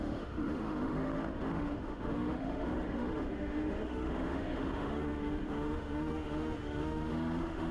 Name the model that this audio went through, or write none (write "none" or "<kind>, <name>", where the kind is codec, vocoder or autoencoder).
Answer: autoencoder, DAC-VAE